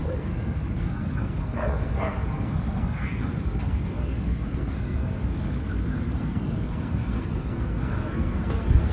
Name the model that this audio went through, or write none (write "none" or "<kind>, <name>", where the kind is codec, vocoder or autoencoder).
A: codec, SNAC